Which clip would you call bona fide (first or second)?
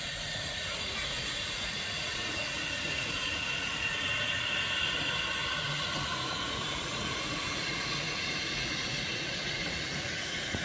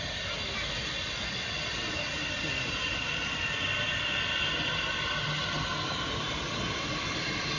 second